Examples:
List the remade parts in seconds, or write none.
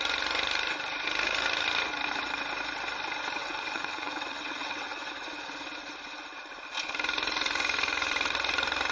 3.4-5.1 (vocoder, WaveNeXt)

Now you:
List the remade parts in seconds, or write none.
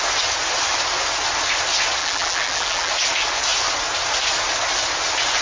2.0-2.9 (vocoder, BigVGAN v2)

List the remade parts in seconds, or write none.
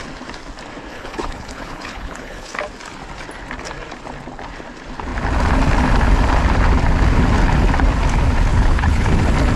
0.9-2.5 (codec, HILCodec); 8.5-9.1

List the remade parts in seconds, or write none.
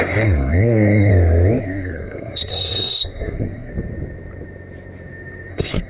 0.0-1.1 (codec, SNAC); 1.6-3.7; 5.5-5.9